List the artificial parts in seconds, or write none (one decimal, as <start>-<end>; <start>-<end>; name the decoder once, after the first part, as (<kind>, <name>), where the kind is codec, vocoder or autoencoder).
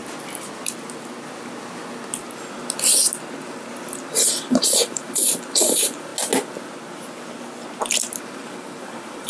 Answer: 4.0-6.1 (vocoder, BigVGAN v2); 8.2-9.3